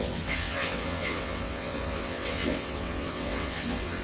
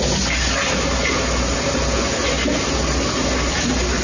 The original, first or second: second